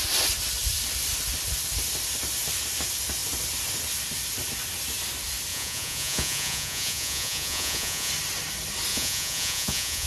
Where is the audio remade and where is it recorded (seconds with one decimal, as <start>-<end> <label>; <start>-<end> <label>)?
0.0-5.5 recorded; 5.5-8.1 remade; 8.1-8.9 recorded; 8.9-10.1 remade